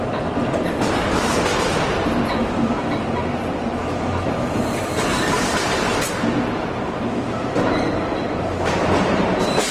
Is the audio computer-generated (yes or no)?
yes